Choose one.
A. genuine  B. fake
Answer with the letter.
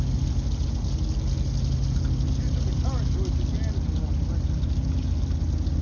A